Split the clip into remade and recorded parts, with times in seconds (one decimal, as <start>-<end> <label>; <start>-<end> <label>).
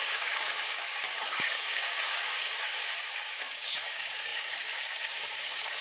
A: 0.0-5.8 remade